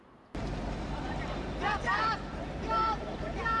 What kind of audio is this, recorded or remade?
remade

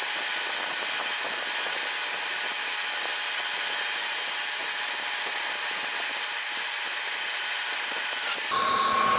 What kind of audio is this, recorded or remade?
recorded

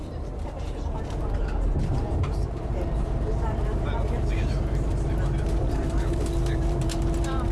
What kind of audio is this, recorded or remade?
remade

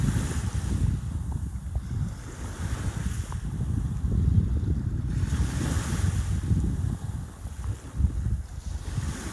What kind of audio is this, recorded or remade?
recorded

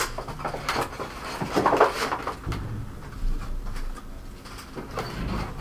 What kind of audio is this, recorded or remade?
recorded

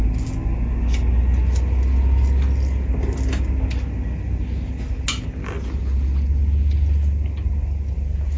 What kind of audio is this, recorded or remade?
recorded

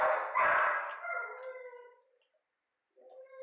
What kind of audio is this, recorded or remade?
recorded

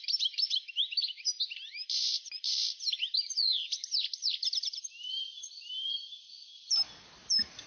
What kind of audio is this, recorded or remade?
remade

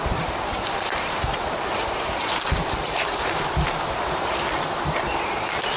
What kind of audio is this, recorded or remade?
remade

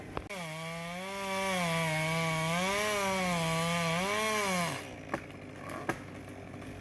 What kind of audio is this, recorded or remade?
recorded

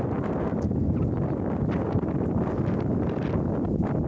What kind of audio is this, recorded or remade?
recorded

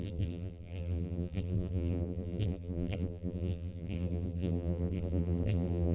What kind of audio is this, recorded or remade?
remade